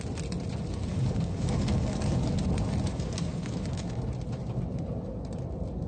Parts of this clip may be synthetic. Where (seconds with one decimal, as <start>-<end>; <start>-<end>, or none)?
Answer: 0.9-2.4; 2.9-3.9